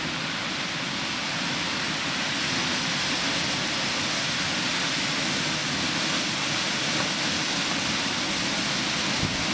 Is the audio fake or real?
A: real